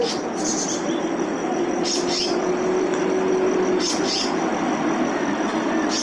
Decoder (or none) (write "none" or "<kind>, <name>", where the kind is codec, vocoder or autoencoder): none